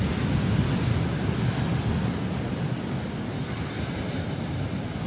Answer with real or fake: real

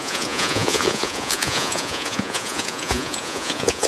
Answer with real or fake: fake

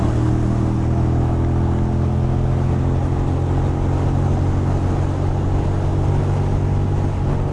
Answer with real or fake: real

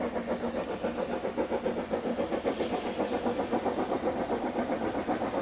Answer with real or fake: real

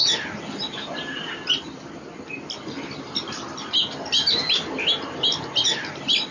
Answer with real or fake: real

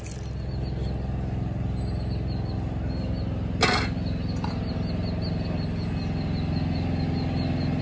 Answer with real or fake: real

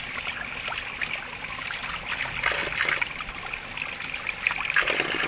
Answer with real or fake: real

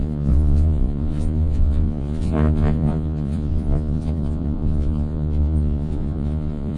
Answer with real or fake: fake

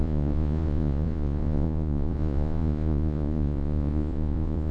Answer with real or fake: fake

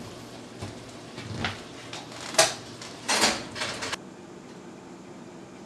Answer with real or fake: real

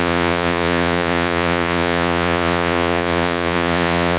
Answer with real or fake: fake